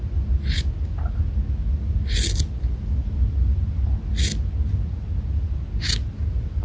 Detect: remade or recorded recorded